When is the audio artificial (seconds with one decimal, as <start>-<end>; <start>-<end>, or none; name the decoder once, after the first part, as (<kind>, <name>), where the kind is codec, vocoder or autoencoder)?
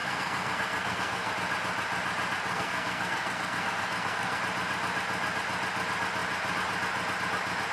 0.0-1.3 (codec, SNAC); 2.5-4.4